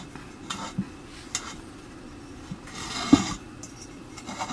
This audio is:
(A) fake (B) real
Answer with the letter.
B